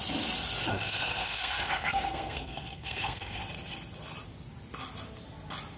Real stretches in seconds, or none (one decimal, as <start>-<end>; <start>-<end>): 0.0-0.7; 3.4-5.8